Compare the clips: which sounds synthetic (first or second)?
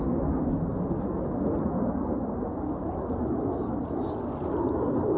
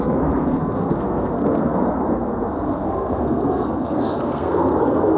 second